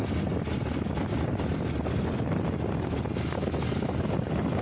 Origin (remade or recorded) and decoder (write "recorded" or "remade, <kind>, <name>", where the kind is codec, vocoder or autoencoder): recorded